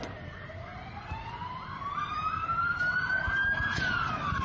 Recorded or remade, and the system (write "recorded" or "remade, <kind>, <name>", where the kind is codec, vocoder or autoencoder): recorded